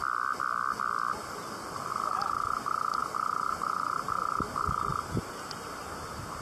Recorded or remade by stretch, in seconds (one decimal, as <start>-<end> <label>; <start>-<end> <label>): 0.0-4.9 remade; 4.9-6.4 recorded